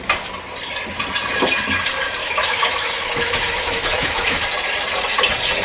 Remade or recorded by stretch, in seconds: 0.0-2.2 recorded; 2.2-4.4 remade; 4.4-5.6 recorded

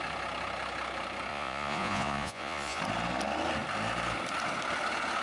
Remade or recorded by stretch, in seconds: 0.0-1.3 recorded; 1.3-2.8 remade; 2.8-5.2 recorded